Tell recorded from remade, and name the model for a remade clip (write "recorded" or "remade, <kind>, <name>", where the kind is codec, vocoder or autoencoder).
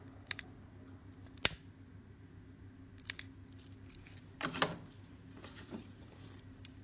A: recorded